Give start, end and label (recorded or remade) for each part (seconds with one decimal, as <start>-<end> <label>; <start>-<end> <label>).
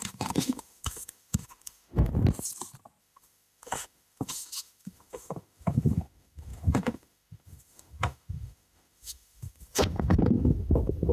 0.0-2.1 remade; 2.1-3.0 recorded; 3.0-11.1 remade